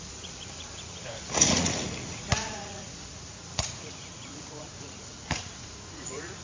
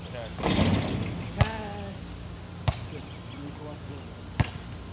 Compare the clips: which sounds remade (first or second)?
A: first